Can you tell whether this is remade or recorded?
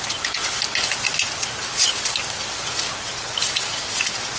recorded